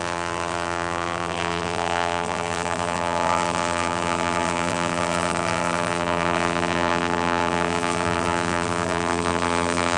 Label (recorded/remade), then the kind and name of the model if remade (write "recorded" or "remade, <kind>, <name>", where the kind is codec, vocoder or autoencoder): remade, vocoder, BigVGAN v2